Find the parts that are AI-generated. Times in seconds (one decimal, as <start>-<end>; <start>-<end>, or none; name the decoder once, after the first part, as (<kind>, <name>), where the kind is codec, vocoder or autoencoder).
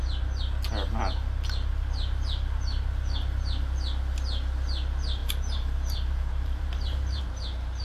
5.2-7.2 (vocoder, BigVGAN v2)